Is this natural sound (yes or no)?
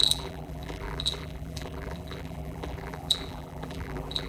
no